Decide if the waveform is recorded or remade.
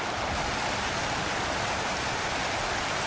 recorded